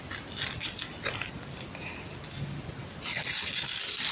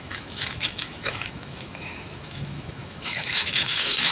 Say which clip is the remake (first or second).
second